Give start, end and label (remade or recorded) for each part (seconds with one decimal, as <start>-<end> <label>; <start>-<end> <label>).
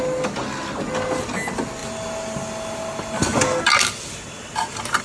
0.0-5.0 recorded